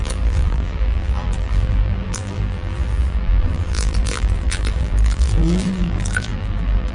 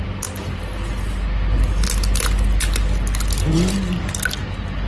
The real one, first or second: second